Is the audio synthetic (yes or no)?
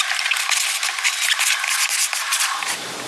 yes